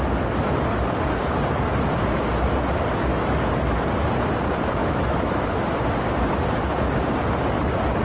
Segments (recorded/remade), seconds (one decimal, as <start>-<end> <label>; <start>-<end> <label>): 0.0-3.1 recorded; 3.1-3.8 remade; 3.8-4.8 recorded; 4.8-5.7 remade; 5.7-8.0 recorded